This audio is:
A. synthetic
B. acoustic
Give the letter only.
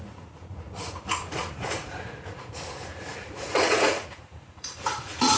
A